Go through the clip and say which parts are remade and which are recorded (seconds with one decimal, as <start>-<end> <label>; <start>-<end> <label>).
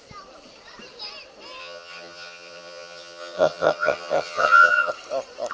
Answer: 0.0-1.6 recorded; 1.6-4.9 remade; 4.9-5.5 recorded